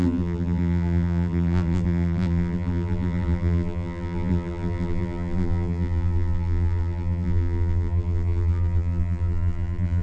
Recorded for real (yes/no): no